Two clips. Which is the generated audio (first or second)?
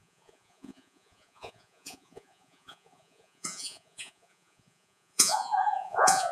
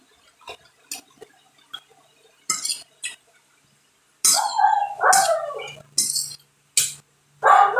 first